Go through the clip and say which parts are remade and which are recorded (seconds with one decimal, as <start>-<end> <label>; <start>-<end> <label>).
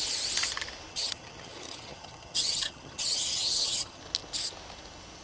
0.0-0.9 recorded; 0.9-4.0 remade; 4.0-5.2 recorded